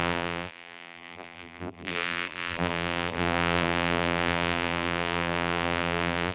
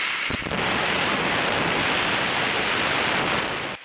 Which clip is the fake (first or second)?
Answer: first